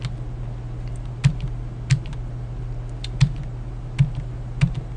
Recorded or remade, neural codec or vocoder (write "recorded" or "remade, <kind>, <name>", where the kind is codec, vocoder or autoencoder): recorded